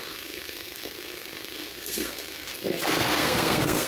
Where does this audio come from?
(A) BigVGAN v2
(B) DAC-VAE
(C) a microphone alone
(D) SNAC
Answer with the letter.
D